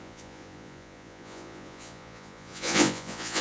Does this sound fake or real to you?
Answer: fake